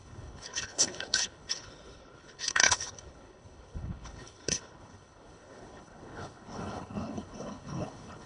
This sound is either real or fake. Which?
fake